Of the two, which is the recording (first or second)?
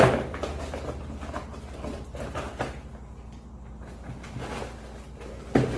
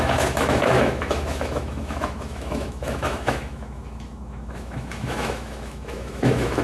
first